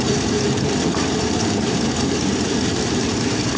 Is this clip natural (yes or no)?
no